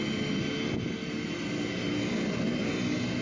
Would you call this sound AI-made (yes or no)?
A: no